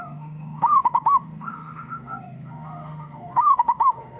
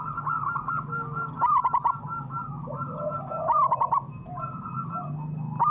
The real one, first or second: second